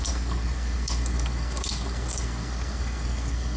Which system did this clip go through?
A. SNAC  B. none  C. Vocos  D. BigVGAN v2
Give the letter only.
A